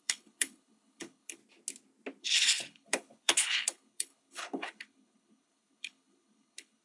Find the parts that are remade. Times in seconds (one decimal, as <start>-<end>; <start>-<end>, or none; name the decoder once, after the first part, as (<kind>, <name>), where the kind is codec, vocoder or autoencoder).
0.0-1.4 (codec, HILCodec); 2.2-6.8